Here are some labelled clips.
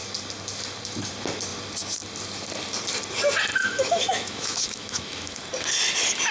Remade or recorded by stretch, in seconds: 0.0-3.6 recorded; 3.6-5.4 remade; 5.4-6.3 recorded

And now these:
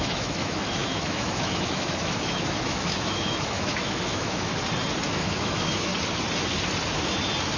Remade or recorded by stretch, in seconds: 0.0-4.5 remade; 4.5-5.1 recorded; 5.1-5.9 remade; 5.9-7.6 recorded

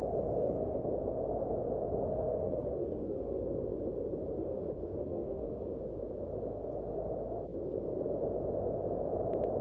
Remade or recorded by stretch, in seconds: 0.0-0.4 recorded; 0.4-0.9 remade; 0.9-2.0 recorded; 2.0-3.4 remade; 3.4-4.4 recorded; 4.4-5.8 remade; 5.8-9.6 recorded

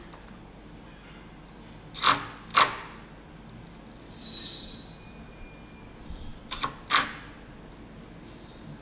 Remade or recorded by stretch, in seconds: 0.0-8.8 recorded

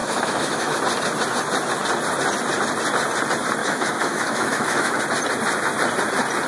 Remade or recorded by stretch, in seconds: 0.0-0.8 remade; 0.8-3.6 recorded; 3.6-5.0 remade; 5.0-6.5 recorded

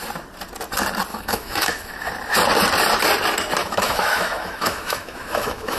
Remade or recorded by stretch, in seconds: 0.0-1.1 recorded; 1.1-2.1 remade; 2.1-3.6 recorded; 3.6-5.8 remade

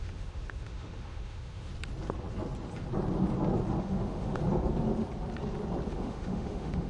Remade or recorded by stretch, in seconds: 0.0-1.7 remade; 1.7-3.8 recorded; 3.8-4.4 remade; 4.4-5.9 recorded; 5.9-6.9 remade